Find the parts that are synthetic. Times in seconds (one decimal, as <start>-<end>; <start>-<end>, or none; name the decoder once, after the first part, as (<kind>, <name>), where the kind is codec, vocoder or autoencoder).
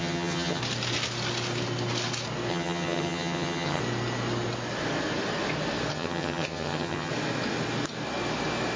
0.0-0.6 (vocoder, HiFi-GAN); 2.5-3.8; 5.9-7.1